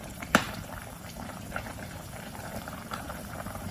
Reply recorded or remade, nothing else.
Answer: remade